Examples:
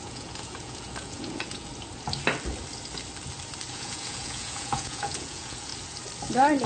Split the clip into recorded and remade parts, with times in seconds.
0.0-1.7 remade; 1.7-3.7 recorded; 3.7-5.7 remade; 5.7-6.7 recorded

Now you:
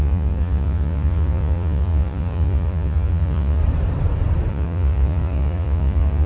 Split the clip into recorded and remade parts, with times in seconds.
0.0-3.6 remade; 3.6-4.5 recorded; 4.5-6.3 remade

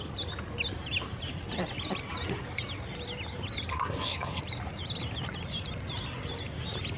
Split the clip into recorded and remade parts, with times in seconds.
0.0-3.7 recorded; 3.7-4.4 remade; 4.4-7.0 recorded